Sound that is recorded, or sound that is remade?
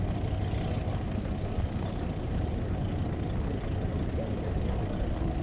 recorded